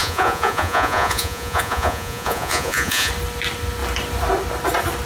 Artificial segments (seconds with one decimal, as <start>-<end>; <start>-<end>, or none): 0.0-3.1